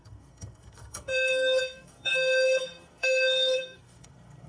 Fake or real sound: fake